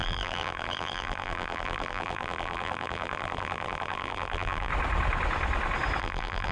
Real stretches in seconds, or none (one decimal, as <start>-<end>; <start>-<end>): 4.7-6.0